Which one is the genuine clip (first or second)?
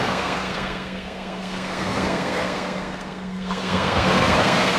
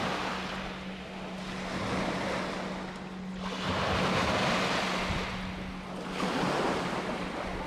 second